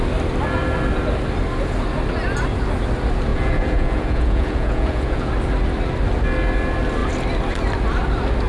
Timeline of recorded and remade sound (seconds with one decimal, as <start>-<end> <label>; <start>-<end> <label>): 0.0-3.3 recorded; 3.3-5.3 remade; 5.3-8.5 recorded